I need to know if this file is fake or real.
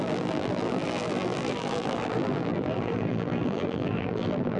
fake